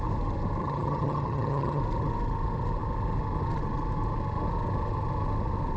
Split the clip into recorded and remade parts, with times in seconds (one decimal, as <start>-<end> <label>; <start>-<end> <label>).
0.0-0.6 recorded; 0.6-1.8 remade; 1.8-5.8 recorded